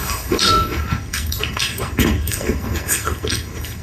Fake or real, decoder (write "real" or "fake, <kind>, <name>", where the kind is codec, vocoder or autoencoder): fake, codec, SNAC